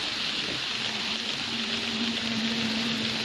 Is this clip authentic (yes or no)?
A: no